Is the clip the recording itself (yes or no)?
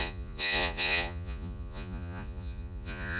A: no